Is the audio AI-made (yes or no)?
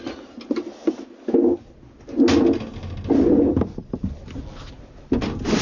no